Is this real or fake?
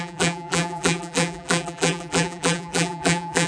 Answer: fake